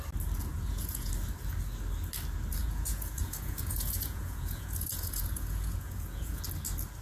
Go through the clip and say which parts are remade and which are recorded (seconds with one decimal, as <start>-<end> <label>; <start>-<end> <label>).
0.0-0.5 recorded; 0.5-1.1 remade; 1.1-2.6 recorded; 2.6-6.4 remade; 6.4-7.0 recorded